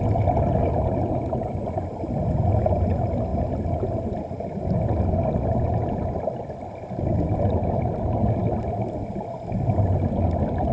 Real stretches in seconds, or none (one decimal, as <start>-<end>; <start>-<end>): 0.0-10.7

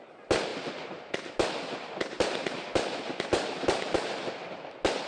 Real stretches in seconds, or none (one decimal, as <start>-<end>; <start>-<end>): 0.0-5.1

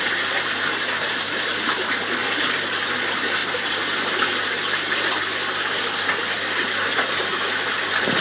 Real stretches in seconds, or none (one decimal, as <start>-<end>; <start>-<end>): 0.0-8.2

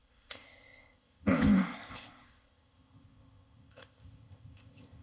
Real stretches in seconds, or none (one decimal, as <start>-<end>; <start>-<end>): none

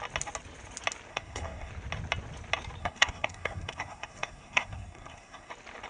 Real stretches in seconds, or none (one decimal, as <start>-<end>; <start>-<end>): 0.0-1.1; 1.7-2.8; 5.5-5.9

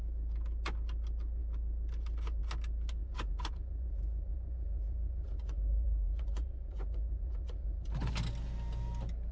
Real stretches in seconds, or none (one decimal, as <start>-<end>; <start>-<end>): 0.0-3.0; 8.1-9.3

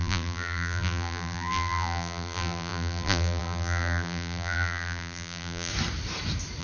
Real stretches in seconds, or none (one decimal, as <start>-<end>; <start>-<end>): 5.7-6.6

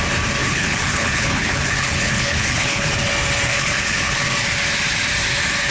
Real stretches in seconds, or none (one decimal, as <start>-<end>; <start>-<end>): 0.0-0.4; 2.9-3.5; 4.2-5.7